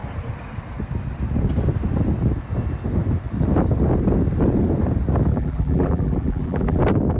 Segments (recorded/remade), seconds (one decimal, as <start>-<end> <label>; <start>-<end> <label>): 0.0-5.3 recorded; 5.3-6.8 remade; 6.8-7.2 recorded